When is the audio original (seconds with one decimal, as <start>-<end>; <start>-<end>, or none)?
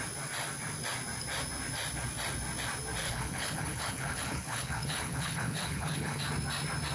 0.0-3.0; 6.2-6.9